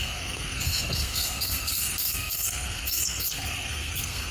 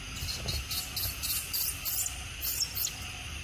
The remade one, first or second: first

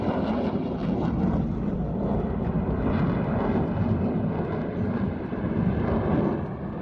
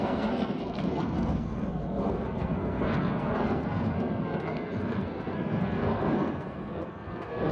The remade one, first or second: second